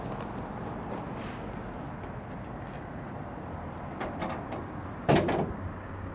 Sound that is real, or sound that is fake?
real